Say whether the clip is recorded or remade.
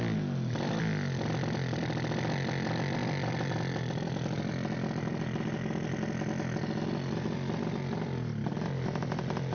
recorded